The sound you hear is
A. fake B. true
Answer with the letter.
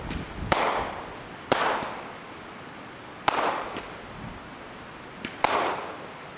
B